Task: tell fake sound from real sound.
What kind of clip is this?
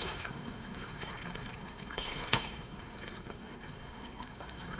fake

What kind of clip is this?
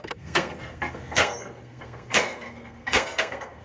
fake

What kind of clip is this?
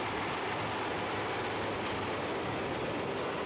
real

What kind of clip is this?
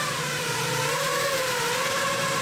fake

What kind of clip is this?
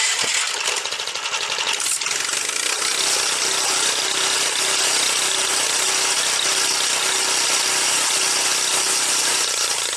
real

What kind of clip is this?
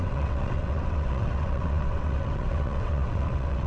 fake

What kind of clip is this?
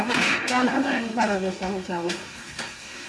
fake